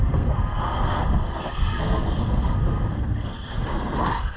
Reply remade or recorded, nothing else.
remade